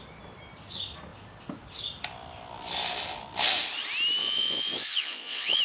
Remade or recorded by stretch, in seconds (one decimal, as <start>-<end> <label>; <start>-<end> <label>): 0.0-4.2 recorded; 4.2-5.6 remade

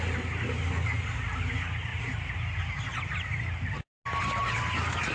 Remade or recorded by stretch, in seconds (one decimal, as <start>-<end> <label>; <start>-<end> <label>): 0.0-5.1 recorded